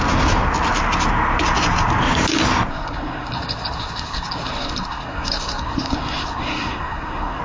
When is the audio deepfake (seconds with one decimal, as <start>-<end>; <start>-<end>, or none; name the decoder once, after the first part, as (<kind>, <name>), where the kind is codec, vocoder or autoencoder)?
2.7-7.4 (codec, SNAC)